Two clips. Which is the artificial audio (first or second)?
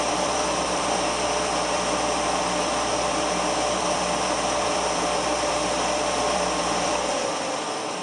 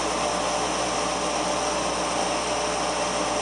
first